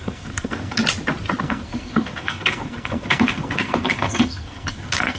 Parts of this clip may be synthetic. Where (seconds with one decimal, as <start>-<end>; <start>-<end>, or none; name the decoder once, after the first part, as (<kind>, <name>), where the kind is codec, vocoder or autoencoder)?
0.0-0.8 (codec, SNAC); 1.4-5.2